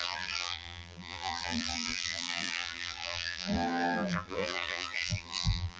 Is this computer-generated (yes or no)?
yes